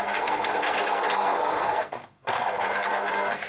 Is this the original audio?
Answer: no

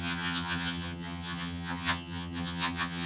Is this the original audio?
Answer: no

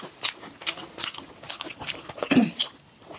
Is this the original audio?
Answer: yes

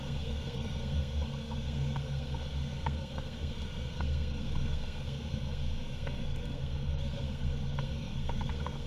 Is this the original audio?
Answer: no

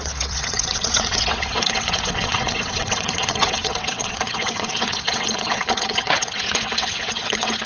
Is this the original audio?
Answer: no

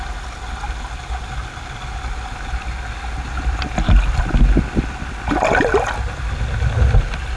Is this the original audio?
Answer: yes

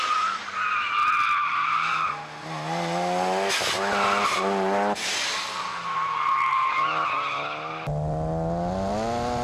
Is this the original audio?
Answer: yes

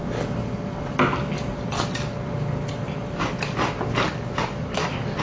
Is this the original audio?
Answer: yes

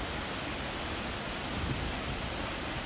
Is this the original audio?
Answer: yes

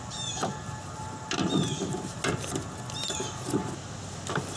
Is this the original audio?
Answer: yes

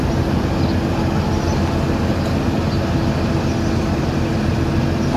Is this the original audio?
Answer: yes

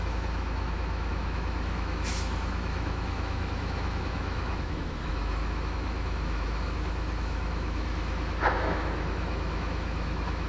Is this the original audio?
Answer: no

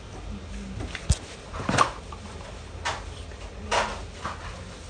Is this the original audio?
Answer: yes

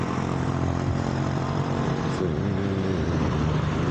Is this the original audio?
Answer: no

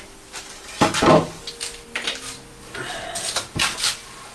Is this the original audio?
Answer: yes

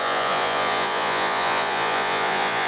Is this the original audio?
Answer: no